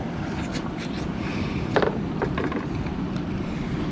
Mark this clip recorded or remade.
remade